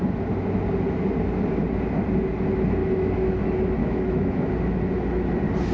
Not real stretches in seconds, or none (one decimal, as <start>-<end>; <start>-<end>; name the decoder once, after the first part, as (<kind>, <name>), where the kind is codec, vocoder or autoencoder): 2.8-3.4 (autoencoder, DAC-VAE); 3.8-4.5